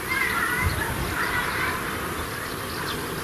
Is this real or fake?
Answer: real